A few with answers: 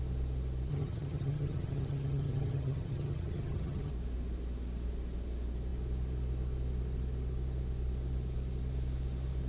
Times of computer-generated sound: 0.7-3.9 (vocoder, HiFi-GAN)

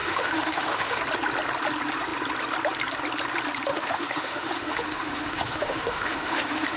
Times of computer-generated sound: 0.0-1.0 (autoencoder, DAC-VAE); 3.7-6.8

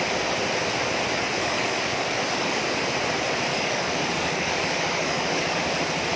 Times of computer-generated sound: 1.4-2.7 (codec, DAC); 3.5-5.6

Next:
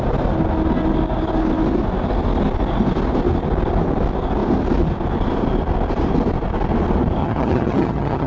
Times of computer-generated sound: 7.2-8.3 (vocoder, HiFi-GAN)